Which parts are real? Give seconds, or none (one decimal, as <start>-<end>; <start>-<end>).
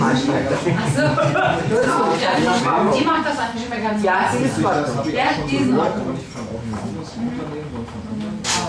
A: 0.0-1.8; 2.6-8.7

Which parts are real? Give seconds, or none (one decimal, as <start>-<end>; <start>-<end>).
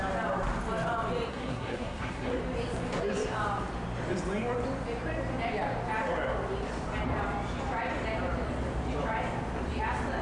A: 0.0-1.3; 2.4-10.2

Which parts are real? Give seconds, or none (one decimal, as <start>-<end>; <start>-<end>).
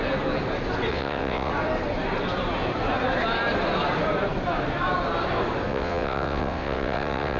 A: 0.0-0.9; 1.5-5.7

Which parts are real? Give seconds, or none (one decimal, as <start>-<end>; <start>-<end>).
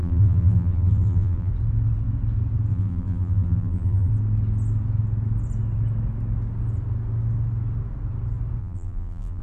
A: 1.5-2.7; 4.1-8.6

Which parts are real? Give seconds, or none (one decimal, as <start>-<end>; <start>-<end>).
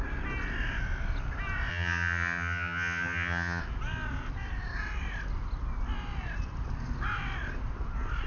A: 0.0-1.7; 3.6-8.3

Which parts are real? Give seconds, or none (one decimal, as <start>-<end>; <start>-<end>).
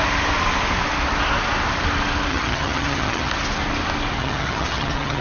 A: 0.0-2.3; 3.3-4.2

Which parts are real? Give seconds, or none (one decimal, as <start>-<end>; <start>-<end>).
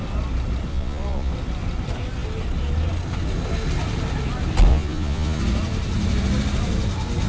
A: 0.0-0.7; 1.3-4.7; 5.4-7.3